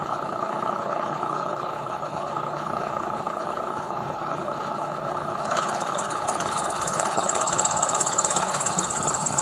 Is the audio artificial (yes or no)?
yes